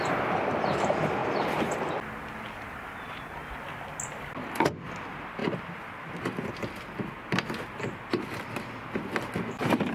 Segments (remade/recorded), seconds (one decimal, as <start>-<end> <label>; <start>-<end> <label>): 0.0-9.9 recorded